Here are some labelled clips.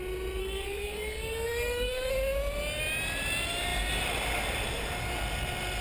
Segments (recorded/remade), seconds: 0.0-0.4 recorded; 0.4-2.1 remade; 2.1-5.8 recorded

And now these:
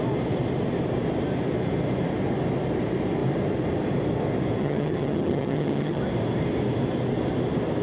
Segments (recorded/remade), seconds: 0.0-4.6 recorded; 4.6-6.0 remade; 6.0-7.8 recorded

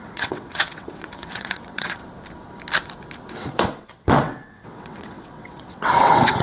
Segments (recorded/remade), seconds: 0.0-2.0 remade; 2.0-3.3 recorded; 3.3-6.4 remade

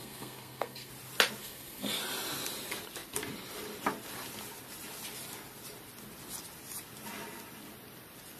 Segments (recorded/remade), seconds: 0.0-0.9 remade; 0.9-1.4 recorded; 1.4-2.0 remade; 2.0-8.4 recorded

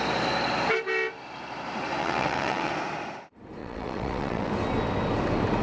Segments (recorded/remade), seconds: 0.0-2.0 recorded; 2.0-2.7 remade; 2.7-3.6 recorded; 3.6-4.5 remade; 4.5-5.6 recorded

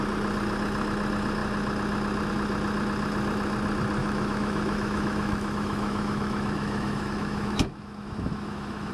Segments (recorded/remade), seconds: 0.0-4.0 recorded; 4.0-8.9 remade

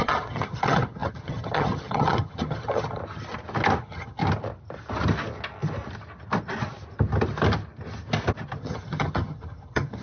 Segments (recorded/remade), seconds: 0.0-3.0 remade; 3.0-3.8 recorded; 3.8-4.2 remade; 4.2-8.6 recorded; 8.6-10.0 remade